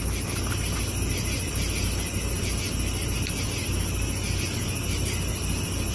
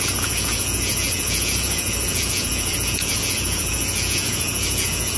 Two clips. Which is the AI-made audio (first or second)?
second